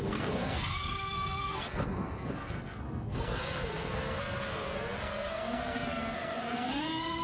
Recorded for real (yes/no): no